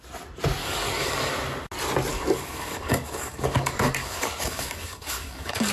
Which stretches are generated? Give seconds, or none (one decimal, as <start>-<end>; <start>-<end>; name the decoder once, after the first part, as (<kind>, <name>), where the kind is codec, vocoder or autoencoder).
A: 0.6-1.3 (codec, DAC); 2.1-5.7